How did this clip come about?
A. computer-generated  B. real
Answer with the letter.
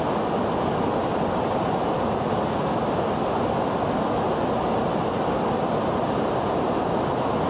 B